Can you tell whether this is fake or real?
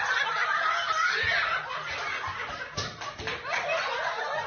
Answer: real